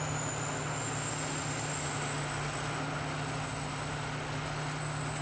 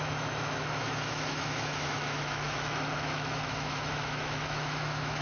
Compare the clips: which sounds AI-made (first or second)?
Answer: second